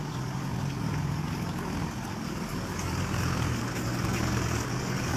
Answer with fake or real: fake